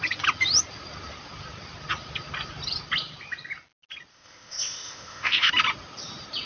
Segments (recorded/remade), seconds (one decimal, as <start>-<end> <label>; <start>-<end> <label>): 0.0-4.1 recorded; 4.1-5.5 remade; 5.5-6.5 recorded